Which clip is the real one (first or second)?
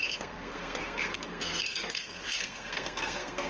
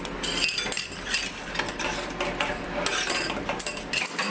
second